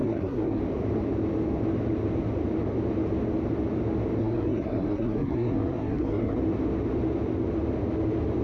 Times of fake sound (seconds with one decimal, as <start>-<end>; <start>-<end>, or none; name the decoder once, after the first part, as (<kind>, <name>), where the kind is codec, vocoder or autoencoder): 0.0-0.6 (codec, SNAC); 4.2-6.4